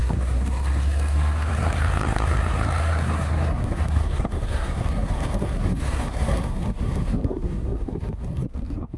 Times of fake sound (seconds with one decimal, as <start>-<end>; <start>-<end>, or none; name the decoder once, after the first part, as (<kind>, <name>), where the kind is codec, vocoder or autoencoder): 0.0-9.0 (codec, SNAC)